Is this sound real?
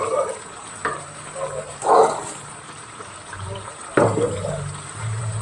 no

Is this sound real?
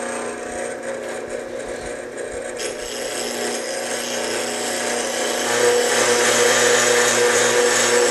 yes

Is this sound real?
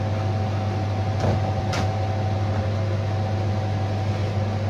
yes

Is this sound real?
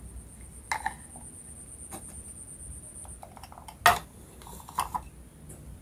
yes